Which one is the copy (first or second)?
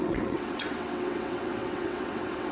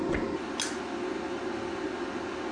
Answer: first